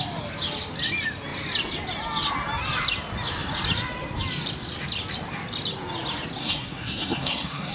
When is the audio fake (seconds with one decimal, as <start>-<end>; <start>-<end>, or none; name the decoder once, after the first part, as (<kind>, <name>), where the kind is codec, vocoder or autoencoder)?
6.4-7.7 (codec, SNAC)